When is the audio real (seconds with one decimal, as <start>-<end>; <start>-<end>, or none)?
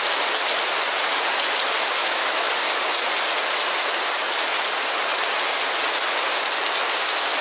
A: 0.0-2.0; 2.5-7.4